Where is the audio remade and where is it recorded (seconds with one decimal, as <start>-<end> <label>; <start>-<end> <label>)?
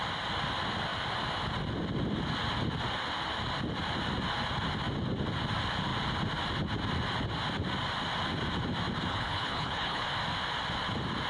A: 0.0-9.1 recorded; 9.1-10.0 remade; 10.0-11.3 recorded